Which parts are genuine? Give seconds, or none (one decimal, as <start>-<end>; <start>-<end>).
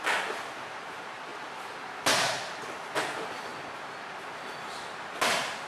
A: 0.0-5.7